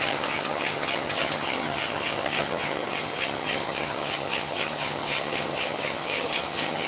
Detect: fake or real fake